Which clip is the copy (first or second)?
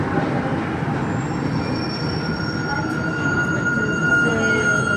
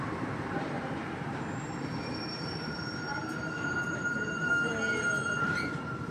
second